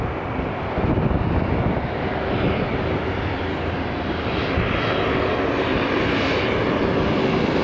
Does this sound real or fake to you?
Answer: real